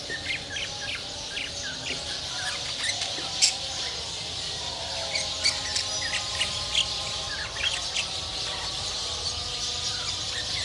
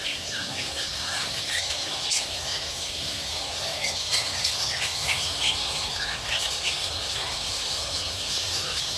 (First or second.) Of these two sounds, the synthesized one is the second